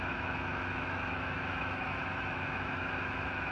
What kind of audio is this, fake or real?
fake